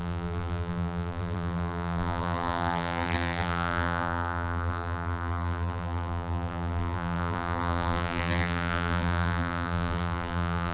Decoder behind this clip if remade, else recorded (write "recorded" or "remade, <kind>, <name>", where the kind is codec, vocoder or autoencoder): remade, vocoder, BigVGAN v2